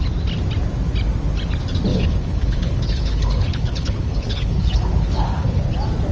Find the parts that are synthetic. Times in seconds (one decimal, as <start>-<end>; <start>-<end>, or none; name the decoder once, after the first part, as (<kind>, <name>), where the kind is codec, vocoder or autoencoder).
1.9-5.6 (codec, HILCodec)